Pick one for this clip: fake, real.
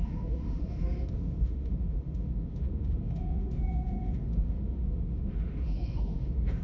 fake